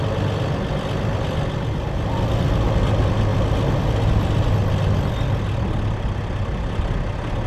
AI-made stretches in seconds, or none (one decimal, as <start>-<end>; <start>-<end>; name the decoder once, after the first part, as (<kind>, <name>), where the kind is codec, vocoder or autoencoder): none